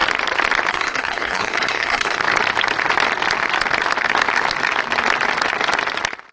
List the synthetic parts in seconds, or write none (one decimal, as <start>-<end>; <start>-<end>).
0.7-2.2